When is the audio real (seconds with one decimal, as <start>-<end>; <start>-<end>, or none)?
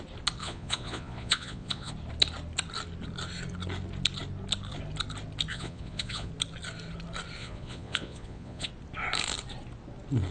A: 0.0-0.4; 1.9-5.5; 6.3-7.4; 8.7-10.3